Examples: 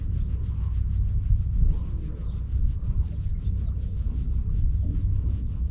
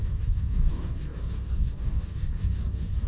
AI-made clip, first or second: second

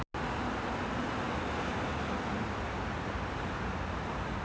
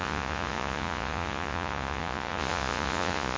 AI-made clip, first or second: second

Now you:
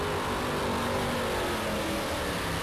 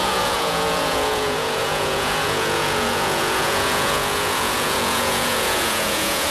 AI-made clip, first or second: second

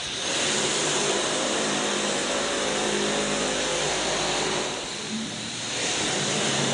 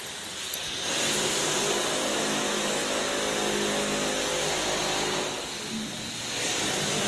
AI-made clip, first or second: first